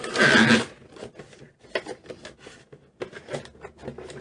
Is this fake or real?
real